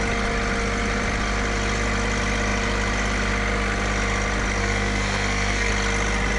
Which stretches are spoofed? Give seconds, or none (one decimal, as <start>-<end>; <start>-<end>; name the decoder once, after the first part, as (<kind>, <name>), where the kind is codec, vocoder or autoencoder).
4.6-5.7 (codec, SNAC)